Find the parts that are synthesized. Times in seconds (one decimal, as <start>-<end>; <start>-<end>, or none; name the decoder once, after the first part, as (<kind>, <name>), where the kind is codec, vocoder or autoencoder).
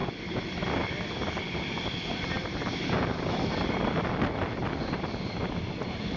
none